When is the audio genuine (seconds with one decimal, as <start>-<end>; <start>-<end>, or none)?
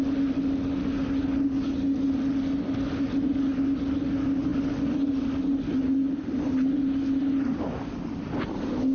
0.0-8.9